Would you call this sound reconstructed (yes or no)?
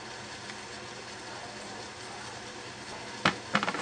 no